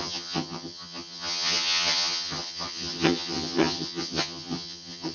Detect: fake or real fake